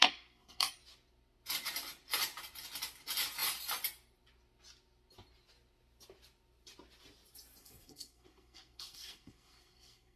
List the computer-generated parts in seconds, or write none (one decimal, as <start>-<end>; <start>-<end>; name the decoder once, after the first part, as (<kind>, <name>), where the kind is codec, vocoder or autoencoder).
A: 0.0-0.8 (codec, SNAC); 7.6-10.2